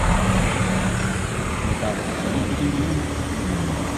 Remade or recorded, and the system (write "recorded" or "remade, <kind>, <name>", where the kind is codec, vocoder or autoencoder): recorded